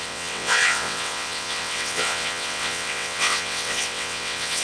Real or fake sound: fake